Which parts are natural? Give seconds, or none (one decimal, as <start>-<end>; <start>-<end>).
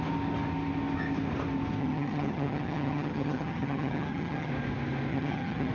0.0-1.8; 4.5-5.1